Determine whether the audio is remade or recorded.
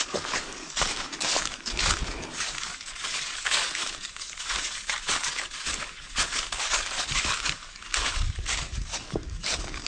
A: remade